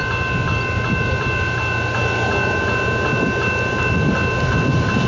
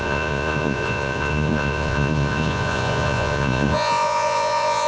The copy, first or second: second